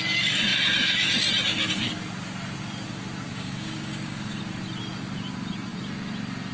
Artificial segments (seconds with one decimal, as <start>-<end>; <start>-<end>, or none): 3.3-4.4